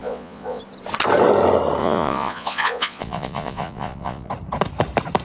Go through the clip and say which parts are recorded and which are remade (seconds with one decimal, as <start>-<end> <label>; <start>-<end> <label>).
0.0-0.6 remade; 0.6-1.8 recorded; 1.8-4.3 remade; 4.3-5.2 recorded